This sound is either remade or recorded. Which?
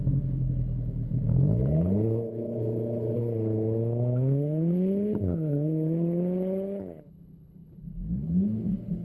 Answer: remade